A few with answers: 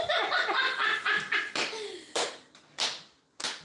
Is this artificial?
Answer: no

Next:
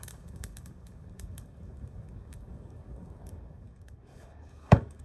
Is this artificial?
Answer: yes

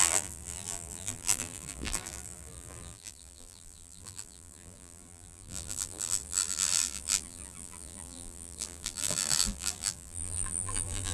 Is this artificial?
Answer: yes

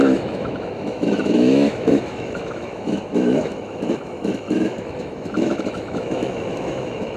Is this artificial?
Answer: yes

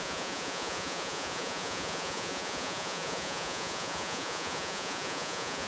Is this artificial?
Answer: yes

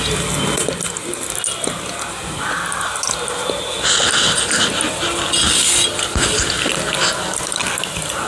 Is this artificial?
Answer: no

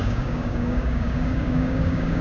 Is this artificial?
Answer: yes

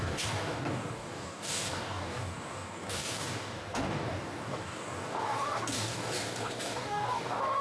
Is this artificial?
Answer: yes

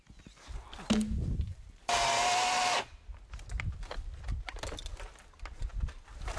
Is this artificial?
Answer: no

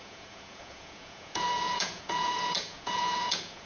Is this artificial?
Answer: yes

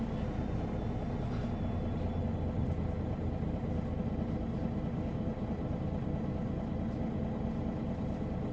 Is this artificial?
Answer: no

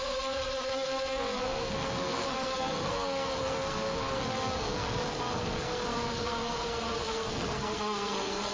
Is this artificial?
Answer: yes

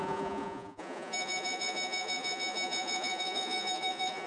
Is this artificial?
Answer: yes